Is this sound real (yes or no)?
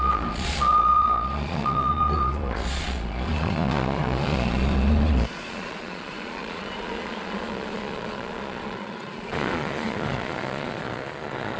no